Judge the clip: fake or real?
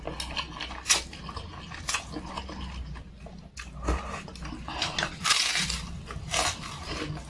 real